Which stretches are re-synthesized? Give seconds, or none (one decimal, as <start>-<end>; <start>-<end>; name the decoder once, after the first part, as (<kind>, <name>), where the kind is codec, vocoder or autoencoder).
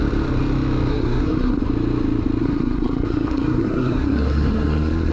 0.9-1.6 (codec, SNAC); 2.4-5.1